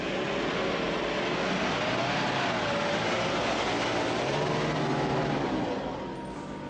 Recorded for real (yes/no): yes